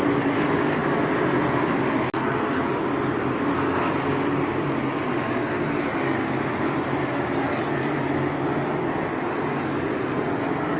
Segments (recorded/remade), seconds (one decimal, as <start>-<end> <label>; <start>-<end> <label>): 0.0-2.7 recorded; 2.7-4.8 remade; 4.8-10.8 recorded